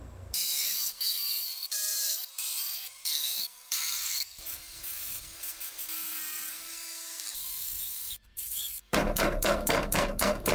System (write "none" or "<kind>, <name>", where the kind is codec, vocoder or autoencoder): codec, SNAC